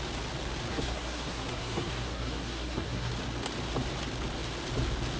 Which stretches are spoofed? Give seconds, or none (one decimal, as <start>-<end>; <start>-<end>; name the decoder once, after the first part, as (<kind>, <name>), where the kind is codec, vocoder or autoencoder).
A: 0.7-3.1 (codec, SNAC)